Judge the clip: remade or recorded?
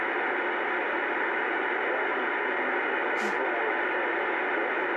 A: recorded